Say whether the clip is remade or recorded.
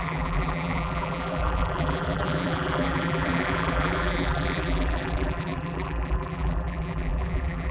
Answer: remade